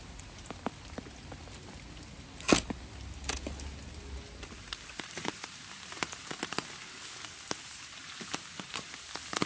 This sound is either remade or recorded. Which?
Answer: recorded